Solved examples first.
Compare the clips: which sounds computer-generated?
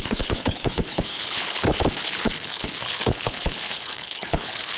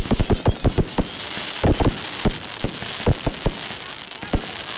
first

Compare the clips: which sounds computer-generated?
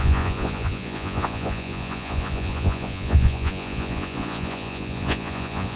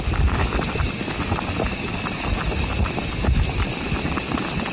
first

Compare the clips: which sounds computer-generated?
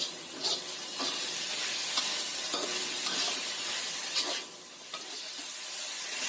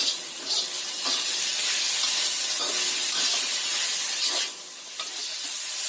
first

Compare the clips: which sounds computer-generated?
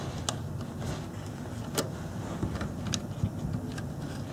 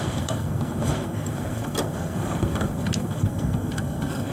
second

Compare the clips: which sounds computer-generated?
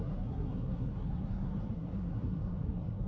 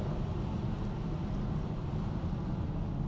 first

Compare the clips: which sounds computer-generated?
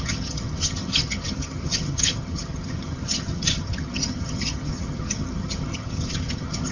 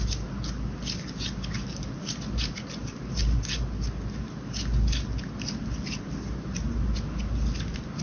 first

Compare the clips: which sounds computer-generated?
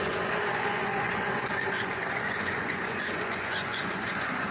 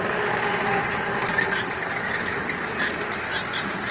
first